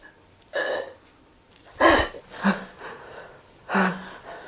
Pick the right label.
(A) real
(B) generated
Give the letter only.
A